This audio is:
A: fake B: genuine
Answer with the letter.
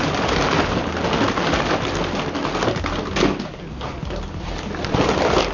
B